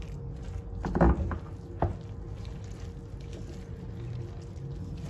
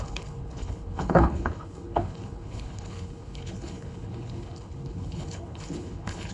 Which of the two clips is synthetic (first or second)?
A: second